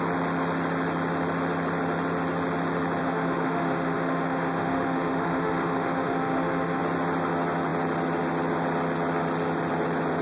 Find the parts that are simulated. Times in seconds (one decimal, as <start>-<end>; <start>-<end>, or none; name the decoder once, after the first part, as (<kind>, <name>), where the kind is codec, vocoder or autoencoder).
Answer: 3.0-6.8 (autoencoder, DAC-VAE)